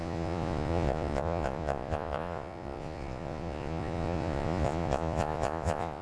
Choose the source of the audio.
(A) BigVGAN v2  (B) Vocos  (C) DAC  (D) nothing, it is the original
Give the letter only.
B